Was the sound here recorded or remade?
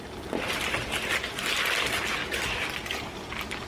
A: recorded